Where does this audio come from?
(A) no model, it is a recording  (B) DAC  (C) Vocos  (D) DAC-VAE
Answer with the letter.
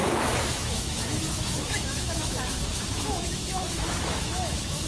D